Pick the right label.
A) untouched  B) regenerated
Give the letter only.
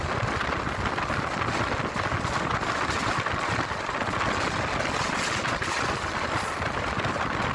A